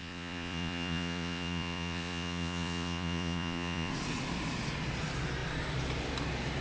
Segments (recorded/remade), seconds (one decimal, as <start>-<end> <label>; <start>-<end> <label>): 0.0-3.9 remade; 3.9-6.6 recorded